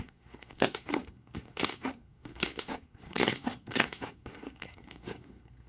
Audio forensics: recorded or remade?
remade